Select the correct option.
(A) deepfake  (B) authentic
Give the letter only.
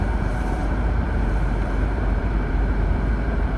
A